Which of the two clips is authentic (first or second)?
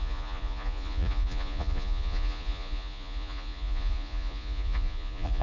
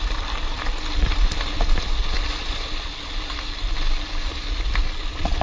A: second